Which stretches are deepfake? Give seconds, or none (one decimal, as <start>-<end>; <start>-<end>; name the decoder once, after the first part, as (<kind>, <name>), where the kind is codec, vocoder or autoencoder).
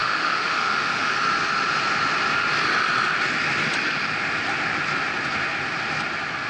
0.0-1.1 (autoencoder, DAC-VAE)